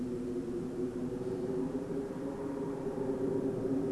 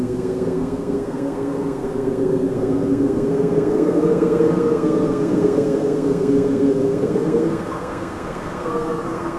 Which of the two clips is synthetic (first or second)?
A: second